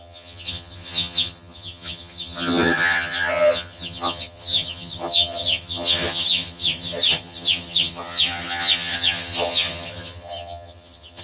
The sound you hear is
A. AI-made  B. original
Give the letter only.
A